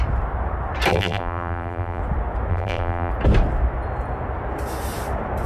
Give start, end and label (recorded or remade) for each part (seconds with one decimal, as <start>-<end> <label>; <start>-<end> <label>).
0.0-0.9 recorded; 0.9-2.0 remade; 2.0-2.5 recorded; 2.5-3.1 remade; 3.1-5.5 recorded